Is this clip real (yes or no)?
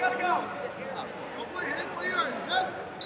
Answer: yes